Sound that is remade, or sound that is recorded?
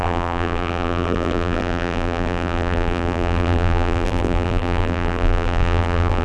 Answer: remade